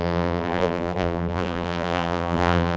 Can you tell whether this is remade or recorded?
remade